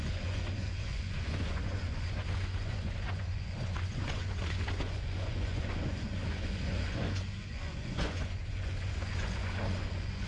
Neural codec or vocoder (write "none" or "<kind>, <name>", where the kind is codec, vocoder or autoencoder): vocoder, Vocos